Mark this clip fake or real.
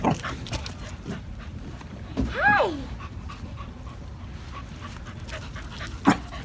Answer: real